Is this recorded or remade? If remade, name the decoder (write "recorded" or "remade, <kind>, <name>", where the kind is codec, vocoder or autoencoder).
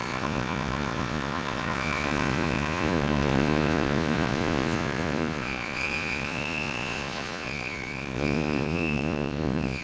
remade, vocoder, Vocos